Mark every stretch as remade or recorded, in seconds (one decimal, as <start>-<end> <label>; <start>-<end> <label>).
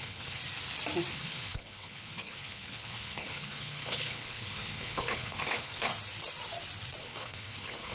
0.0-0.4 remade; 0.4-1.1 recorded; 1.1-5.9 remade; 5.9-7.0 recorded; 7.0-7.9 remade